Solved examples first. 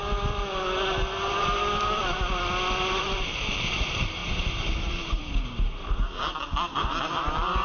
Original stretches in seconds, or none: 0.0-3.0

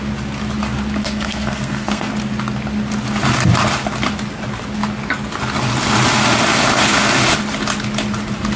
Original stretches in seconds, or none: 0.0-1.0; 2.1-8.6

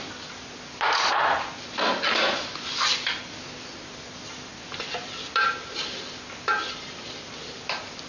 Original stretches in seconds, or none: 0.0-8.1

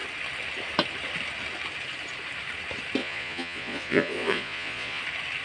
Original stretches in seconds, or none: 0.0-3.0; 5.0-5.4

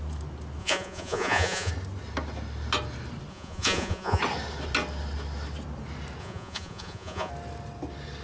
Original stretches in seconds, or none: 0.0-0.6; 1.7-3.3; 4.2-6.2; 7.3-8.2